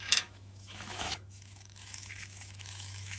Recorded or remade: remade